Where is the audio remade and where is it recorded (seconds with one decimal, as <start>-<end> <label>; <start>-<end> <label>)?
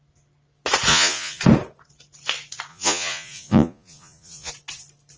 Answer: 0.0-0.9 recorded; 0.9-1.4 remade; 1.4-2.7 recorded; 2.7-4.5 remade; 4.5-5.2 recorded